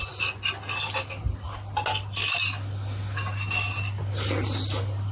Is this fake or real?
real